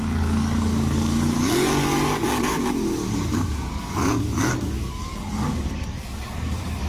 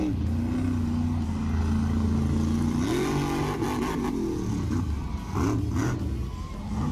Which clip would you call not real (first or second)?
first